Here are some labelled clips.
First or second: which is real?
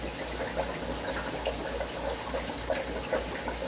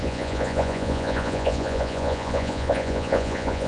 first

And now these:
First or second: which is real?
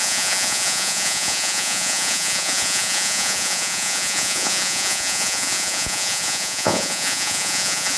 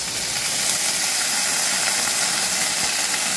second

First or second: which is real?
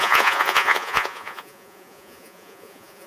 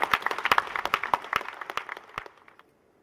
second